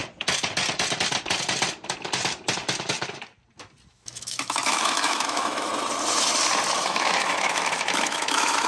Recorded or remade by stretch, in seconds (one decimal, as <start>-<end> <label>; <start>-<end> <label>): 0.0-3.9 recorded; 3.9-5.7 remade; 5.7-6.8 recorded; 6.8-8.7 remade